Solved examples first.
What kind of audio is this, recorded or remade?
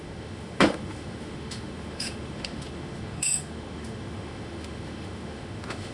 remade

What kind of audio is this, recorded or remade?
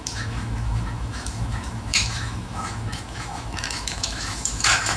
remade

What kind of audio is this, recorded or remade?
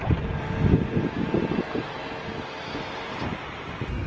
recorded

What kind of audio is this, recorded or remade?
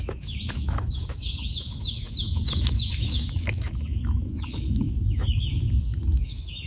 remade